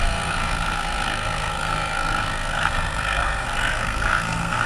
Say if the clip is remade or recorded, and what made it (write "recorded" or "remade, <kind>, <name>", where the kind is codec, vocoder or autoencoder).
remade, codec, SNAC